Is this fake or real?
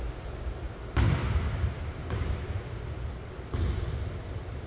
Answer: real